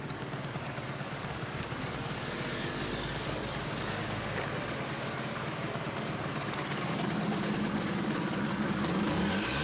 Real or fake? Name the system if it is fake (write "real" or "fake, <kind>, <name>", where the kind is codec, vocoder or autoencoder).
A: fake, codec, DAC